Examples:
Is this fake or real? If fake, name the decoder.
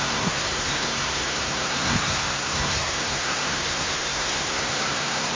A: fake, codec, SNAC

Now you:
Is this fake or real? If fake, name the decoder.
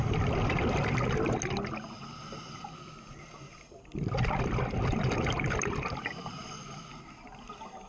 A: real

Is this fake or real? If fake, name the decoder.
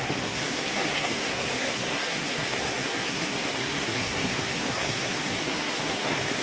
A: fake, codec, SNAC